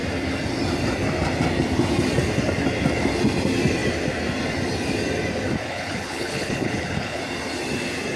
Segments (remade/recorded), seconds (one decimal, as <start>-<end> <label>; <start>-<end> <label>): 0.0-5.6 recorded; 5.6-7.2 remade; 7.2-8.2 recorded

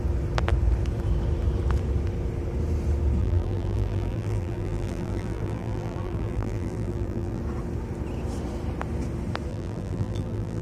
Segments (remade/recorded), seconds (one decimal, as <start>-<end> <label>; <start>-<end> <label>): 0.0-3.2 recorded; 3.2-7.4 remade; 7.4-9.5 recorded; 9.5-10.6 remade

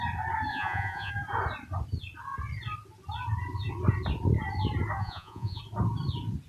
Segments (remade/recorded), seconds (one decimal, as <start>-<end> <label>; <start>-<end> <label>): 0.0-0.5 recorded; 0.5-1.1 remade; 1.1-5.0 recorded; 5.0-5.6 remade; 5.6-6.5 recorded

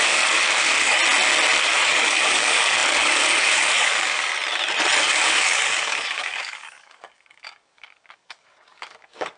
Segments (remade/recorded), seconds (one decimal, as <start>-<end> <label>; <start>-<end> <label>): 0.0-1.0 remade; 1.0-1.6 recorded; 1.6-4.3 remade; 4.3-5.0 recorded; 5.0-9.4 remade

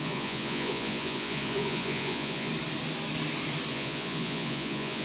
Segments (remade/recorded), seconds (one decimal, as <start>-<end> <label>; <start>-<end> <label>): 0.0-2.5 remade; 2.5-3.7 recorded; 3.7-5.0 remade

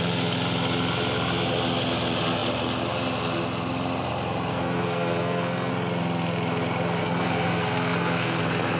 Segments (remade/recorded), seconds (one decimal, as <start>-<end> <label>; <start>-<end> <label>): 0.0-4.5 recorded; 4.5-5.7 remade; 5.7-7.0 recorded; 7.0-8.4 remade; 8.4-8.8 recorded